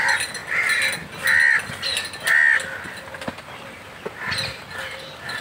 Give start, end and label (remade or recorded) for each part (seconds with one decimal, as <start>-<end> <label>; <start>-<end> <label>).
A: 0.0-5.4 recorded